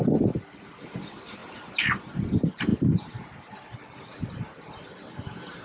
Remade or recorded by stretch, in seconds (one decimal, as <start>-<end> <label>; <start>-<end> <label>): 0.0-5.6 recorded